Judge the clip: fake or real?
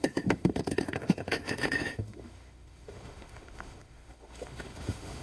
fake